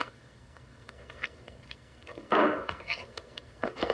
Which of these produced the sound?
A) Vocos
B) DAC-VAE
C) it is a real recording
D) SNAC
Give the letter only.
D